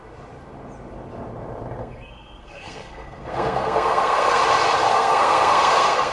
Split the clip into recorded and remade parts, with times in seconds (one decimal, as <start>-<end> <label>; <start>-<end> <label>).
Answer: 0.0-1.8 recorded; 1.8-4.4 remade; 4.4-4.9 recorded; 4.9-6.1 remade

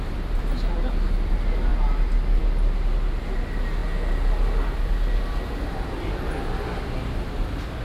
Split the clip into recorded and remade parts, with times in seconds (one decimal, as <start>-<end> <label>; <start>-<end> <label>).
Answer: 0.0-7.8 recorded

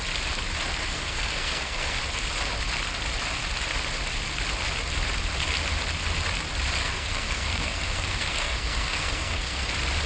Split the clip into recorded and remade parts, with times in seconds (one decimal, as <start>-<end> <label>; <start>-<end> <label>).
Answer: 0.0-0.9 recorded; 0.9-2.0 remade; 2.0-6.8 recorded; 6.8-9.7 remade; 9.7-10.1 recorded

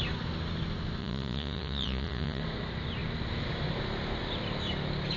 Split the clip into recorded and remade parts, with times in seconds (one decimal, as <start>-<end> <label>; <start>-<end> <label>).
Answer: 0.0-1.0 recorded; 1.0-2.4 remade; 2.4-5.2 recorded

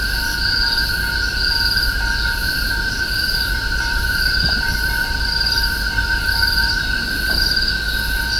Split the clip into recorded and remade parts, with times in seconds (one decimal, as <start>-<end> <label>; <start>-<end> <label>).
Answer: 0.0-2.4 recorded; 2.4-4.3 remade; 4.3-8.4 recorded

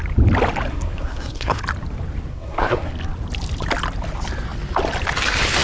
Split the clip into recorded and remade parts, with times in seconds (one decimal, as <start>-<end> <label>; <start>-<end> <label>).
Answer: 0.0-0.7 recorded; 0.7-1.6 remade; 1.6-2.3 recorded; 2.3-2.9 remade; 2.9-5.6 recorded

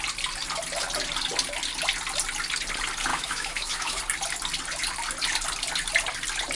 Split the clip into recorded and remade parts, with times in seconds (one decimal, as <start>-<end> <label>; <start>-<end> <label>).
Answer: 0.0-3.1 recorded; 3.1-4.0 remade; 4.0-6.5 recorded

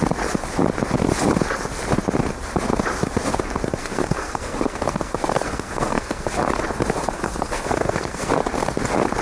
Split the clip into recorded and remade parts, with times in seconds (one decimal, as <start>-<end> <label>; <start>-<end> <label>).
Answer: 0.0-3.8 recorded; 3.8-6.3 remade; 6.3-7.0 recorded; 7.0-8.3 remade; 8.3-9.2 recorded